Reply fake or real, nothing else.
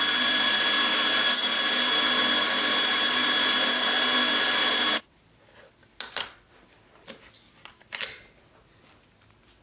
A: real